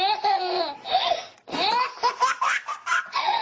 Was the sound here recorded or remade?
recorded